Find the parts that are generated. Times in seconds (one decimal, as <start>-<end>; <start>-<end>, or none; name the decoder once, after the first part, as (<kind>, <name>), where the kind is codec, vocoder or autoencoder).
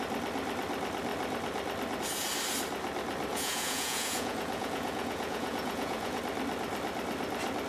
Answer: 3.3-6.2 (vocoder, Vocos)